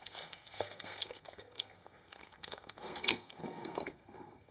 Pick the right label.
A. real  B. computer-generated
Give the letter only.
B